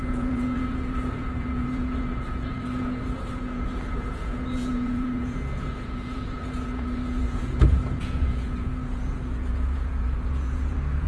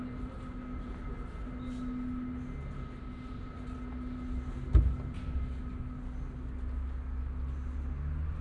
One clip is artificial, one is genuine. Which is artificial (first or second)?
first